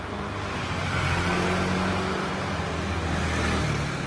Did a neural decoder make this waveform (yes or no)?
no